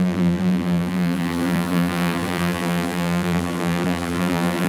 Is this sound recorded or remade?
remade